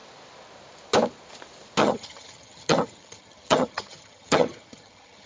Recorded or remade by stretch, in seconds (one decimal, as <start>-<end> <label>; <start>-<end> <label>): 0.0-1.8 recorded; 1.8-5.3 remade